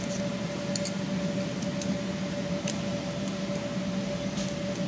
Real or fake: real